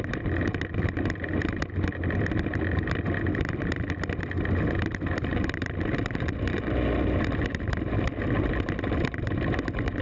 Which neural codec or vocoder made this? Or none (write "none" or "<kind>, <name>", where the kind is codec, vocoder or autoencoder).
none